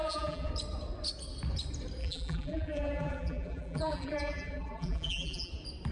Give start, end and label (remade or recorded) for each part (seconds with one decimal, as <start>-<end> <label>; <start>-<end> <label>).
0.0-0.5 remade; 0.5-2.0 recorded; 2.0-5.5 remade; 5.5-5.9 recorded

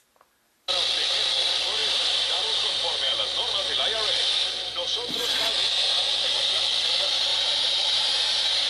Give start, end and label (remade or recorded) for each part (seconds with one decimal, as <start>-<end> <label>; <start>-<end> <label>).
0.0-1.8 recorded; 1.8-3.5 remade; 3.5-4.2 recorded; 4.2-4.9 remade; 4.9-7.3 recorded; 7.3-8.7 remade

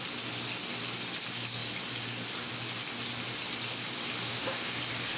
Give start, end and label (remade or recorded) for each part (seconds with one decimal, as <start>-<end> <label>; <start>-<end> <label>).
0.0-4.3 recorded; 4.3-4.8 remade; 4.8-5.2 recorded

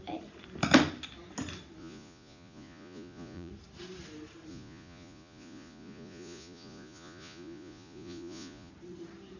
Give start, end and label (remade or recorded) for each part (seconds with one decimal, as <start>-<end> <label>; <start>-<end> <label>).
0.0-1.8 recorded; 1.8-3.5 remade; 3.5-4.5 recorded; 4.5-8.7 remade; 8.7-9.4 recorded